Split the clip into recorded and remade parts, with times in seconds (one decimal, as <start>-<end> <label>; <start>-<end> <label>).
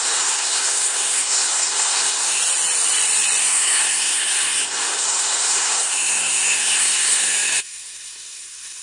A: 0.0-2.4 remade; 2.4-3.4 recorded; 3.4-8.8 remade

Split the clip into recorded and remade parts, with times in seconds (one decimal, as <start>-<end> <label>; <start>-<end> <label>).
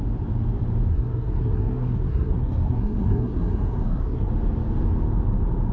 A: 0.0-0.9 recorded; 0.9-4.3 remade; 4.3-5.7 recorded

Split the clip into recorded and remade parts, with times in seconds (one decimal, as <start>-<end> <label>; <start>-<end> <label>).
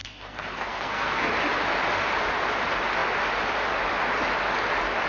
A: 0.0-1.3 remade; 1.3-5.1 recorded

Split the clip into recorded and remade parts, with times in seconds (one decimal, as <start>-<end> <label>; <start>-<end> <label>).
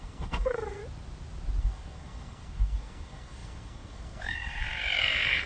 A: 0.0-0.8 remade; 0.8-1.6 recorded; 1.6-5.5 remade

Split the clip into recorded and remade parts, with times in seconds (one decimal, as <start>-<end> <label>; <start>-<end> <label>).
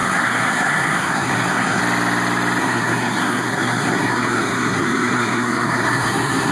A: 0.0-1.8 remade; 1.8-2.6 recorded; 2.6-6.5 remade